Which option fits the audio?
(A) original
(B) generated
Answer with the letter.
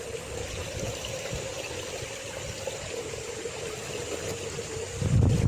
A